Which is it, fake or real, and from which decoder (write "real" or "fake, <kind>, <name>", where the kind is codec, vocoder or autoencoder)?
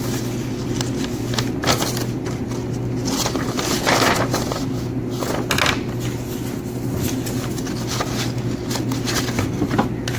real